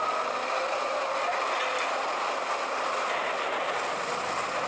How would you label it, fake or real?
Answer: real